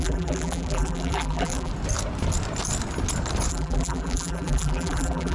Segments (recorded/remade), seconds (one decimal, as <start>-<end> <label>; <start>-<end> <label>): 0.0-1.7 remade; 1.7-3.5 recorded; 3.5-5.3 remade